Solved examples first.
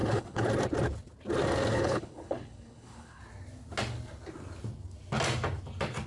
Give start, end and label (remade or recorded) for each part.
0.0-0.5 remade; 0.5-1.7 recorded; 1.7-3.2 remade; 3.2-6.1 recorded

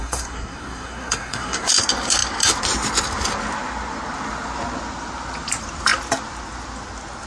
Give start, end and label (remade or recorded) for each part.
0.0-1.7 remade; 1.7-7.3 recorded

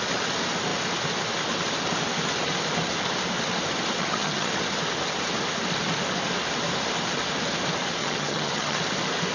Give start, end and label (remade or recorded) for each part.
0.0-4.0 recorded; 4.0-4.5 remade; 4.5-8.0 recorded; 8.0-8.8 remade; 8.8-9.3 recorded

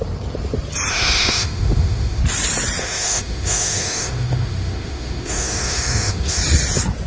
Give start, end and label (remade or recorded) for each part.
0.0-0.9 recorded; 0.9-2.2 remade; 2.2-2.8 recorded; 2.8-6.4 remade; 6.4-7.1 recorded

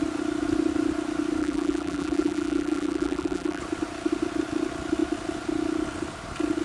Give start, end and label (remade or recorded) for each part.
0.0-1.4 recorded; 1.4-3.6 remade; 3.6-6.6 recorded

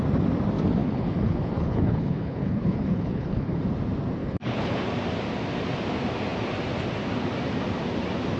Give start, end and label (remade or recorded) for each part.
0.0-0.8 recorded; 0.8-3.6 remade; 3.6-4.2 recorded; 4.2-4.8 remade; 4.8-8.4 recorded

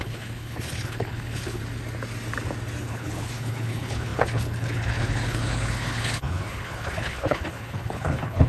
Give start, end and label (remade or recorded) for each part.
0.0-1.6 remade; 1.6-2.8 recorded; 2.8-8.5 remade